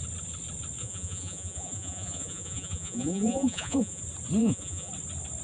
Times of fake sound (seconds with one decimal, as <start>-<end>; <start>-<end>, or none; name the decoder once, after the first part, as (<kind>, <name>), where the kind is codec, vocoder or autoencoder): 0.8-4.0 (vocoder, Vocos); 4.4-4.9